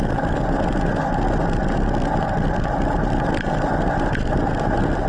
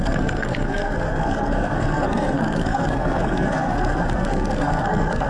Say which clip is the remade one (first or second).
second